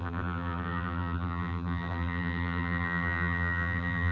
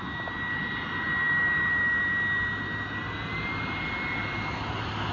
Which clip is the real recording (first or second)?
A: second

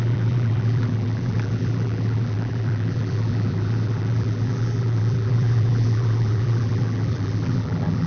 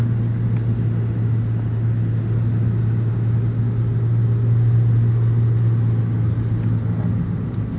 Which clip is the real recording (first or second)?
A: second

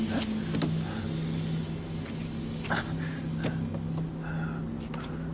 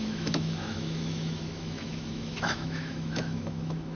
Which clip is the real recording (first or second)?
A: first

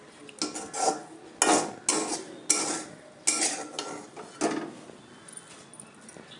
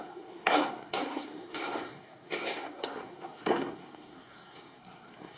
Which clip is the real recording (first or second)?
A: first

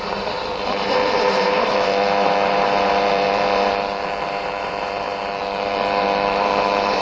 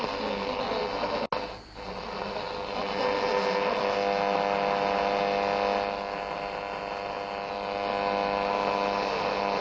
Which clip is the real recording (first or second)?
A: second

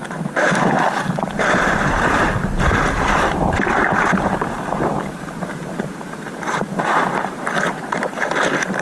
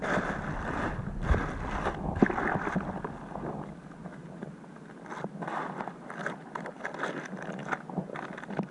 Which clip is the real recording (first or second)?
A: second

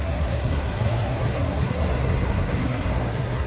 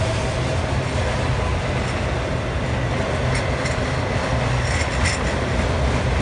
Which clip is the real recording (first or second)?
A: second